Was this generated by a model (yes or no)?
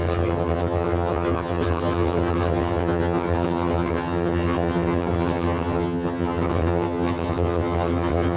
yes